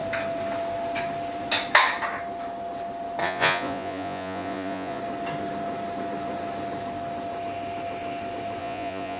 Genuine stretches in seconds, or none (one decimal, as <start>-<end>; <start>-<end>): 0.0-3.2; 5.0-8.6